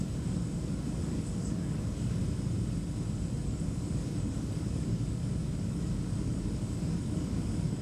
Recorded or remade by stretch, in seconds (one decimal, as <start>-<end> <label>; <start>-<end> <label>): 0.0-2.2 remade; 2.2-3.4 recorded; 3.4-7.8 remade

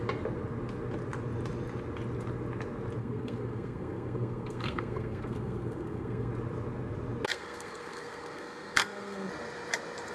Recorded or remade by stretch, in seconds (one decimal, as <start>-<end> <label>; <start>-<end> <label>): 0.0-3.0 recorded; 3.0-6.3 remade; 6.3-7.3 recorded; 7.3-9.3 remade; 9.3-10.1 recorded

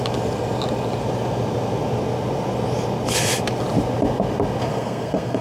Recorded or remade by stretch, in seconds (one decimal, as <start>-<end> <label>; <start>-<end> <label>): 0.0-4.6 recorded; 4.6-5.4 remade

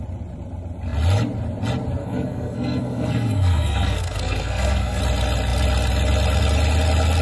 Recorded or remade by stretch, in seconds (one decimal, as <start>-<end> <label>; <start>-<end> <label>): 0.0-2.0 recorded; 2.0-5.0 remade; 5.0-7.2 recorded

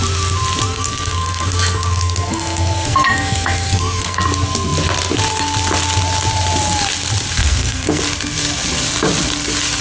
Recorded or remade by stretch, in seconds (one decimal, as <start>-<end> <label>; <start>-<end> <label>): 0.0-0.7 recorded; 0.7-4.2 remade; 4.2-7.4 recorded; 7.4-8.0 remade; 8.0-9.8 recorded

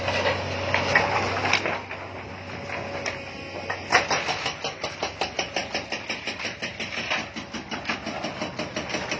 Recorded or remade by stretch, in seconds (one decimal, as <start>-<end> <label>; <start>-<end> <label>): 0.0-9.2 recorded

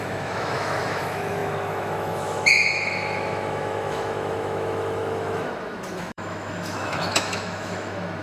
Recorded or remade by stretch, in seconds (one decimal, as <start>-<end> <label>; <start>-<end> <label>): 0.0-8.2 remade

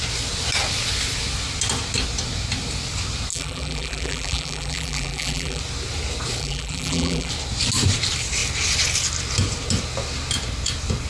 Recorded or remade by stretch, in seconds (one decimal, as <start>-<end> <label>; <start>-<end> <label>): 0.0-3.3 recorded; 3.3-5.6 remade; 5.6-6.4 recorded; 6.4-7.3 remade; 7.3-11.1 recorded